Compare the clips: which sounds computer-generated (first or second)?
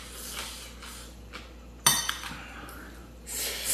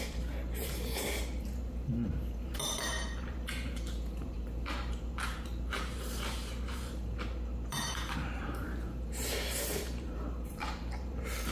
second